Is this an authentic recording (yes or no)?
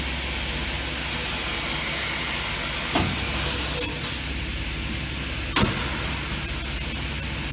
yes